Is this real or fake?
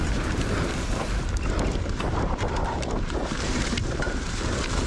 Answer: fake